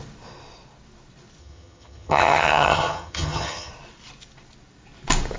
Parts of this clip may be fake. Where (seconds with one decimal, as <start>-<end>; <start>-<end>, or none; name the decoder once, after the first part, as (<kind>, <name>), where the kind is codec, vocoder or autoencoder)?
1.4-3.7 (vocoder, HiFi-GAN)